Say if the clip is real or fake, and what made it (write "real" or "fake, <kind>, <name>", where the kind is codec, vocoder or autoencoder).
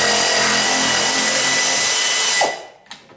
real